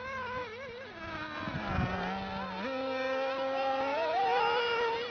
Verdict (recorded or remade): recorded